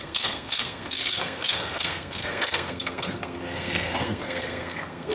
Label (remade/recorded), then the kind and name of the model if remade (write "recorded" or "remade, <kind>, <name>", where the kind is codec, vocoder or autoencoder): remade, codec, SNAC